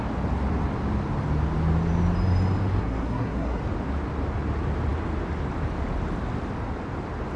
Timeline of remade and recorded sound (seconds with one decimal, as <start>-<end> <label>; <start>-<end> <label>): 0.0-2.8 recorded; 2.8-3.6 remade; 3.6-7.4 recorded